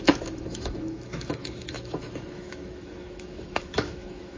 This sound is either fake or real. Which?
fake